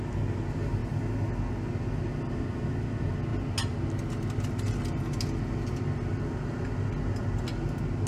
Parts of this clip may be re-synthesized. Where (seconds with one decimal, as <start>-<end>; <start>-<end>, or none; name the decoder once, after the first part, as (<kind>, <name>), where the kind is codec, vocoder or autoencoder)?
none